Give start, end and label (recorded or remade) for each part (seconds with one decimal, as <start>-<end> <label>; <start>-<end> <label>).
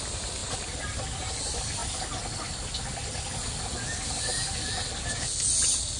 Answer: 0.0-6.0 recorded